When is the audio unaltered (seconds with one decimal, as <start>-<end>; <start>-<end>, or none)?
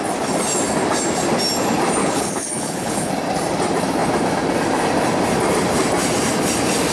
0.0-2.0; 3.1-6.9